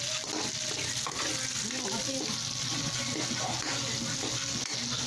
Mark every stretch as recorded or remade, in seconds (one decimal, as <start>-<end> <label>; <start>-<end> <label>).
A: 0.0-5.1 recorded